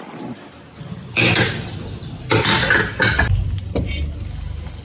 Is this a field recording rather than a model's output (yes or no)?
yes